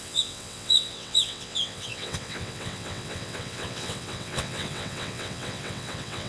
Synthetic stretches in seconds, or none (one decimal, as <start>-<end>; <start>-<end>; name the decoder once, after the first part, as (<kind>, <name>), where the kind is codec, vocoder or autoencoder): 0.0-6.3 (vocoder, WaveNeXt)